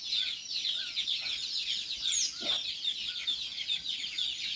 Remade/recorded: recorded